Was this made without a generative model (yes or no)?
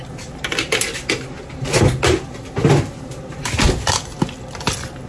yes